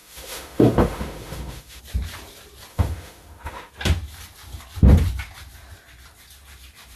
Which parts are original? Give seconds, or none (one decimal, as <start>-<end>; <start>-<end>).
1.8-2.7; 3.7-7.0